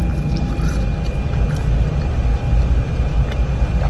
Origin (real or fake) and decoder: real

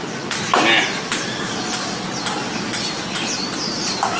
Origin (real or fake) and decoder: real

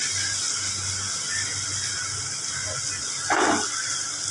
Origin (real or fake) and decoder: real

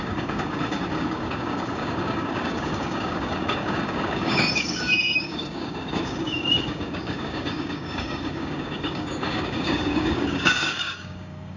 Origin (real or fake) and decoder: fake, codec, DAC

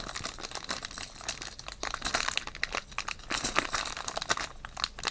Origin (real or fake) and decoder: real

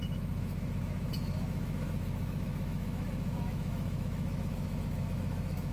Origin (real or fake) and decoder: fake, autoencoder, DAC-VAE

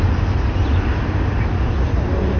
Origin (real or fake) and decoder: real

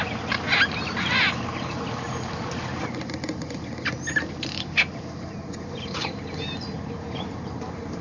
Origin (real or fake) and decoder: real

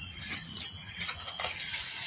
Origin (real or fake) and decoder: fake, vocoder, Vocos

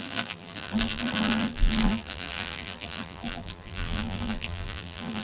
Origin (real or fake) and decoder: fake, vocoder, BigVGAN v2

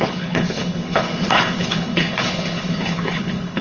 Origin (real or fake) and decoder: fake, codec, HILCodec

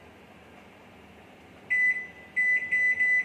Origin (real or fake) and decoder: real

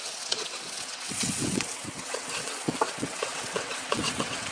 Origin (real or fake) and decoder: fake, vocoder, WaveNeXt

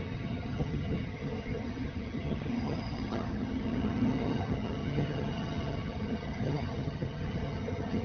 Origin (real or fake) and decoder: fake, vocoder, HiFi-GAN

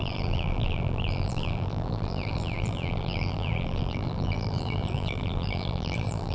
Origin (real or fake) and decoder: fake, vocoder, BigVGAN v2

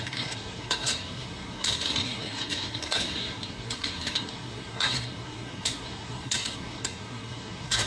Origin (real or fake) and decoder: fake, codec, SNAC